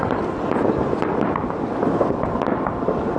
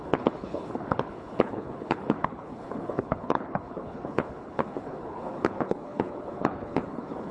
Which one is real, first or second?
first